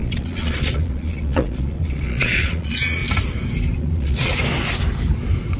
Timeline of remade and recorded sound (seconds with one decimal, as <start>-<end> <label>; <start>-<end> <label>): 0.0-3.0 remade; 3.0-3.8 recorded; 3.8-4.3 remade; 4.3-5.6 recorded